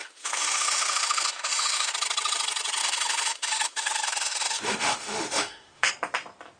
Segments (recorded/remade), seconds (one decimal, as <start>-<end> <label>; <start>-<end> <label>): 0.0-1.9 remade; 1.9-2.8 recorded; 2.8-5.9 remade; 5.9-6.6 recorded